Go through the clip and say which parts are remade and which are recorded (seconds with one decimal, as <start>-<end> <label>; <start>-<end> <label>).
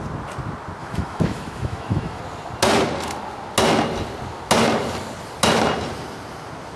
0.0-0.8 recorded; 0.8-2.2 remade; 2.2-6.8 recorded